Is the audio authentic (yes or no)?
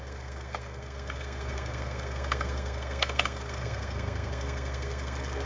no